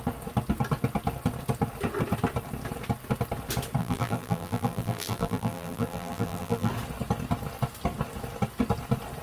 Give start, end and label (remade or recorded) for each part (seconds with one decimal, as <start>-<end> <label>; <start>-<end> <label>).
0.0-3.8 recorded; 3.8-6.7 remade; 6.7-9.2 recorded